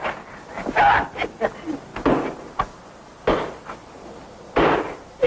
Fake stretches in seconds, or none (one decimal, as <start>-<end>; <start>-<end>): none